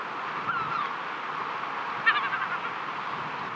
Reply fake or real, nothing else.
real